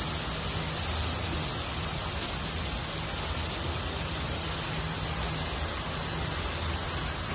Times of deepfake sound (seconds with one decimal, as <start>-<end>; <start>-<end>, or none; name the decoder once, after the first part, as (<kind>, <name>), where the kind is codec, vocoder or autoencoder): none